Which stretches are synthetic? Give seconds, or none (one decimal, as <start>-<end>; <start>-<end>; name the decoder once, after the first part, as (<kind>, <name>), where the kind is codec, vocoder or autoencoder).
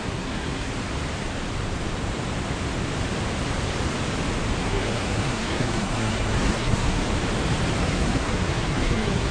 0.0-0.7 (codec, SNAC); 4.6-7.1; 7.8-9.3